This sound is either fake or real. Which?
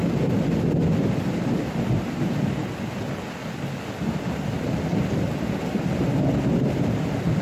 real